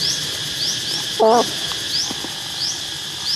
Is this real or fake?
real